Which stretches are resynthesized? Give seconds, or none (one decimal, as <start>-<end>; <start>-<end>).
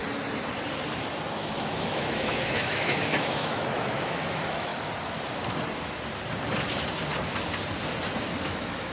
1.3-4.7; 8.4-8.9